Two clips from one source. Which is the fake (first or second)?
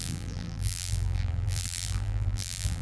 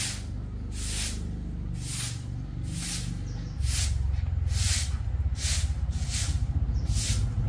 first